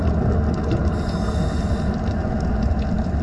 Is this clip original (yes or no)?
yes